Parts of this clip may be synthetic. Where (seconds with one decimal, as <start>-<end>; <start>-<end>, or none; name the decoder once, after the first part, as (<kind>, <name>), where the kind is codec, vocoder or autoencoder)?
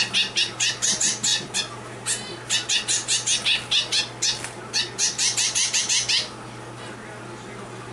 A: none